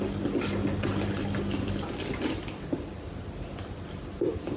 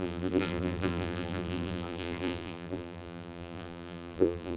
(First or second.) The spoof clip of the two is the second